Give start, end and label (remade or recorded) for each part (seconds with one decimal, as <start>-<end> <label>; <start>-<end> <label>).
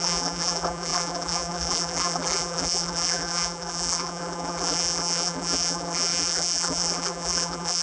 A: 0.0-7.8 remade